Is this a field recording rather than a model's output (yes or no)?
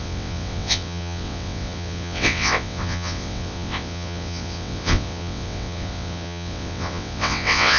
no